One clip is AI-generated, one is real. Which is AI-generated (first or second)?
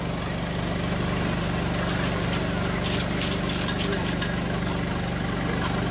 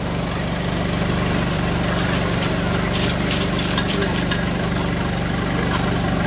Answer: second